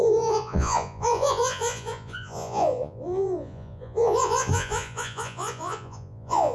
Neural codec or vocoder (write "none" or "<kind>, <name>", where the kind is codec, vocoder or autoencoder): vocoder, Vocos